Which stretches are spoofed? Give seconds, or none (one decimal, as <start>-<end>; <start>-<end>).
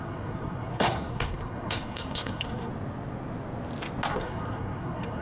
0.0-2.7; 4.1-5.2